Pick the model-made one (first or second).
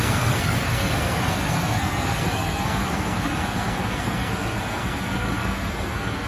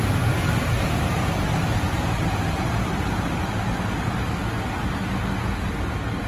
first